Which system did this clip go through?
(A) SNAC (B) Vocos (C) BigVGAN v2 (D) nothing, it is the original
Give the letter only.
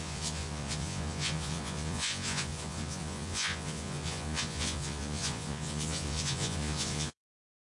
B